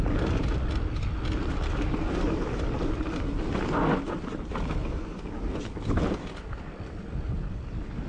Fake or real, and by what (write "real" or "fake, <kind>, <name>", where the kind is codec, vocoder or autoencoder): real